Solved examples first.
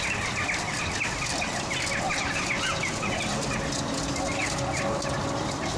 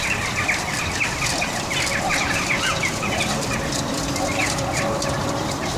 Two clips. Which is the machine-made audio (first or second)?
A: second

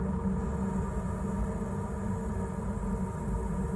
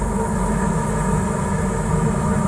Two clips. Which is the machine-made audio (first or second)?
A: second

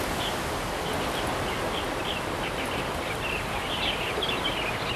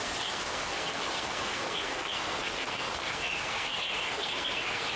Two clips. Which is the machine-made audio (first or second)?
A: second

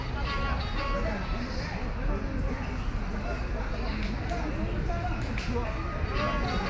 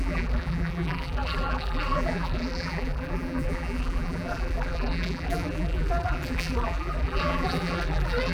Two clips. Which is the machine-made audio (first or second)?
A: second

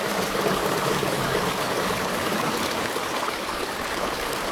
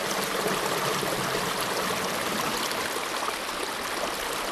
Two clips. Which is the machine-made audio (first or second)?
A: first